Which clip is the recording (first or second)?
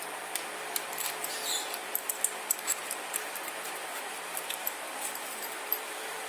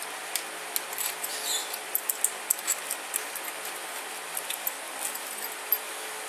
second